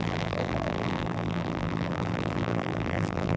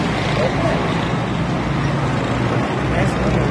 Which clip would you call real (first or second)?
second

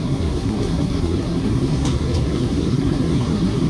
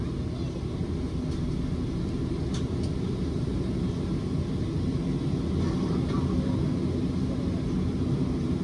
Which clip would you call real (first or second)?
second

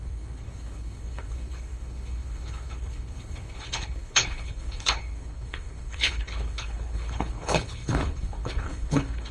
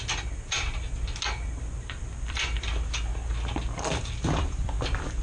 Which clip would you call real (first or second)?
second